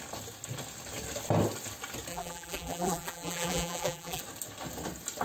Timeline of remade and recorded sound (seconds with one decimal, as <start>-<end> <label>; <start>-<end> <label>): 0.0-2.1 recorded; 2.1-4.2 remade; 4.2-5.2 recorded